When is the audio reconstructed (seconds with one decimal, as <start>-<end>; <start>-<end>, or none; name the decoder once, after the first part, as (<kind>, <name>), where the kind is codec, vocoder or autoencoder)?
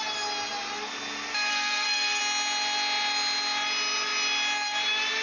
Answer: 1.5-2.2 (codec, SNAC)